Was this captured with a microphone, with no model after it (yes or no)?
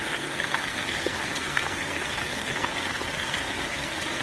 no